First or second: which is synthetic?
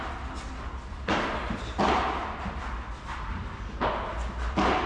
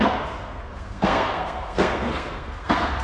second